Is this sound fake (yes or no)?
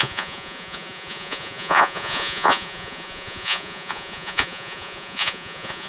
yes